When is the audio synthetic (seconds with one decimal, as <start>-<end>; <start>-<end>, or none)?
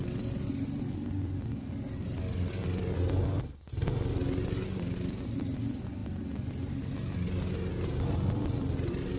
none